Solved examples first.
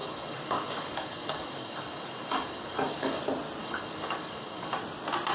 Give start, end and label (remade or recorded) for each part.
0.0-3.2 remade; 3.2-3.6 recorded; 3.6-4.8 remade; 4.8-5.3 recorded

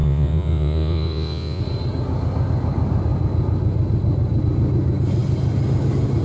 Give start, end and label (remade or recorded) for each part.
0.0-1.6 remade; 1.6-6.2 recorded